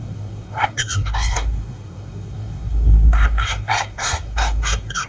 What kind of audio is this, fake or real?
fake